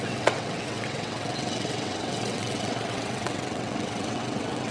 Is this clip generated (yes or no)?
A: yes